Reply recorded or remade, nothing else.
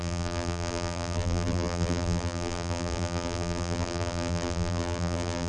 remade